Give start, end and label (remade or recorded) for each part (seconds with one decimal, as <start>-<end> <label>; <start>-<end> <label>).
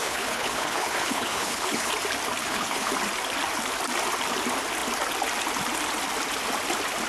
0.0-1.9 remade; 1.9-2.4 recorded; 2.4-2.9 remade; 2.9-7.1 recorded